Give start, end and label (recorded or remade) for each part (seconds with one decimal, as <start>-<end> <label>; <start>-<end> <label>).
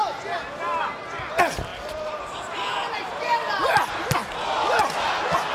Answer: 0.0-1.7 recorded; 1.7-5.0 remade; 5.0-5.5 recorded